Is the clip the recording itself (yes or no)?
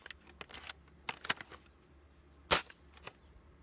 yes